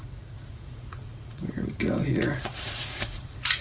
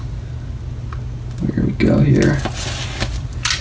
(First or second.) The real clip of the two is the second